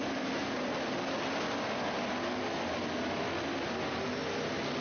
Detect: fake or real real